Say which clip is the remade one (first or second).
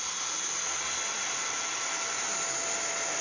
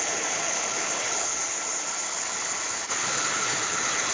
second